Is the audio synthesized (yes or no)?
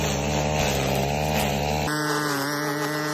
no